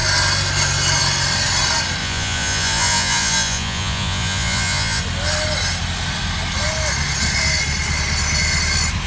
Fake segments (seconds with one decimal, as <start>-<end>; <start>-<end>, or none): 2.0-5.0